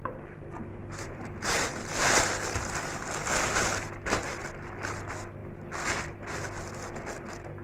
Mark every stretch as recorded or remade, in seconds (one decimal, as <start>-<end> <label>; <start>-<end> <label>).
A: 0.0-0.7 recorded; 0.7-1.7 remade; 1.7-7.6 recorded